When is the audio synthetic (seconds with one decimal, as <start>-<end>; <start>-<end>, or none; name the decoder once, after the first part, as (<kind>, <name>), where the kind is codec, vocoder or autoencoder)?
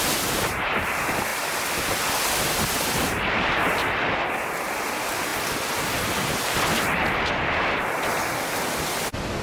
none